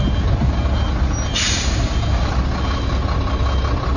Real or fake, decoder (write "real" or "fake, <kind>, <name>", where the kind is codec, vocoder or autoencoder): real